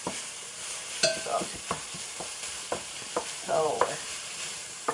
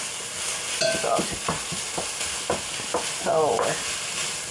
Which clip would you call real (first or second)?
second